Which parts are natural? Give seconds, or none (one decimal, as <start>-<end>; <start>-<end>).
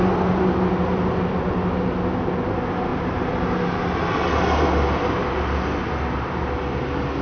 0.0-7.2